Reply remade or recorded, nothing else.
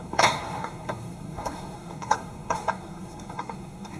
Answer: remade